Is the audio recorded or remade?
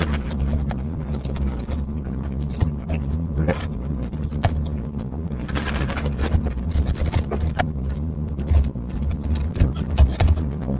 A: remade